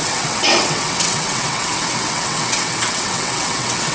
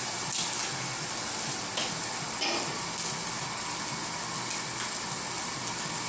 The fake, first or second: first